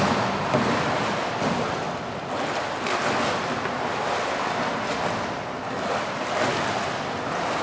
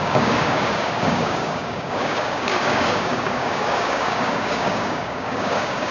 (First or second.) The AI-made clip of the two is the second